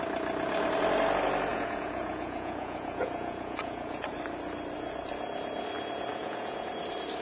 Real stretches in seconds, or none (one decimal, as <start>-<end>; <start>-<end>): 0.0-1.5; 4.1-6.1; 6.7-7.2